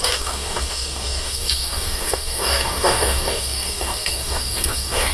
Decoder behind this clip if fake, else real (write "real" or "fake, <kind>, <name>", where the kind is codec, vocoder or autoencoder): fake, codec, DAC